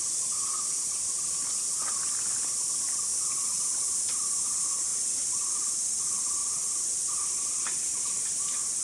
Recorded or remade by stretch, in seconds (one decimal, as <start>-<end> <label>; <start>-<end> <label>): 0.0-8.8 recorded